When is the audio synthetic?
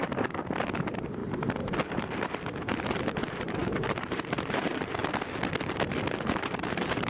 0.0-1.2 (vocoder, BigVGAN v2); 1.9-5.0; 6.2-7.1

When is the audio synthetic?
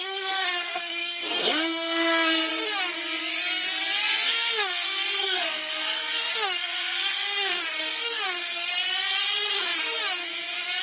0.0-2.5 (codec, SNAC); 4.0-8.7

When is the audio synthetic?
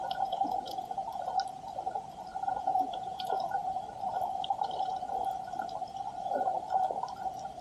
0.0-1.0 (vocoder, Vocos); 2.6-3.6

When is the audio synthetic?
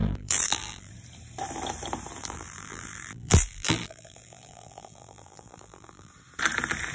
0.0-0.9 (vocoder, BigVGAN v2); 2.2-6.1